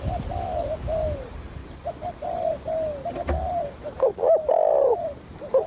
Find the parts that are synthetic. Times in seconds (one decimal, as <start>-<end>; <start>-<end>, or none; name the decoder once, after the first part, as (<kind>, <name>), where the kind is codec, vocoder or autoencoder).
0.0-1.6 (vocoder, BigVGAN v2); 2.1-5.7